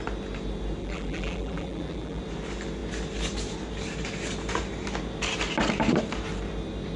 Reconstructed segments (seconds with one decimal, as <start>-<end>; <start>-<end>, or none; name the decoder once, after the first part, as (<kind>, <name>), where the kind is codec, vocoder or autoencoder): 0.8-2.2 (vocoder, BigVGAN v2)